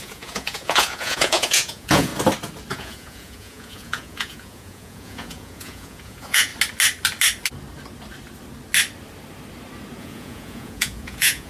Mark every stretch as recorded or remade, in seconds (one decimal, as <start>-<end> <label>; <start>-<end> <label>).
0.0-2.1 remade; 2.1-2.7 recorded; 2.7-6.5 remade; 6.5-10.0 recorded; 10.0-11.5 remade